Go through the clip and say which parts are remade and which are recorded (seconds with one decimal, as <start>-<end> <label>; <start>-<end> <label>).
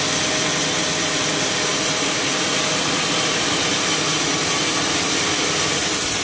0.0-6.2 recorded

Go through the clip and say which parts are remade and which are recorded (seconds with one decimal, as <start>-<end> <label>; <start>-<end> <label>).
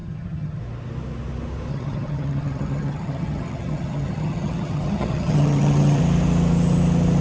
0.0-0.6 remade; 0.6-1.7 recorded; 1.7-6.0 remade; 6.0-7.2 recorded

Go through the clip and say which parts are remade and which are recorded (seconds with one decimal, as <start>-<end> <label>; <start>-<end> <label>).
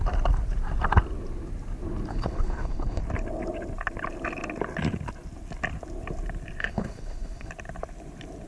0.0-2.1 recorded; 2.1-3.0 remade; 3.0-6.6 recorded; 6.6-7.5 remade; 7.5-8.5 recorded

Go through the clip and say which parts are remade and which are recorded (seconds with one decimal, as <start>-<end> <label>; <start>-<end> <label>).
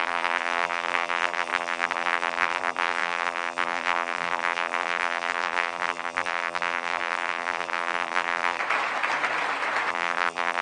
0.0-8.6 remade; 8.6-9.9 recorded; 9.9-10.6 remade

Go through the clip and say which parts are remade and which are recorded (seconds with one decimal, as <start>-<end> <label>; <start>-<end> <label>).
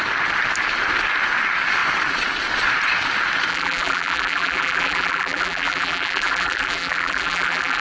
0.0-3.5 recorded; 3.5-7.8 remade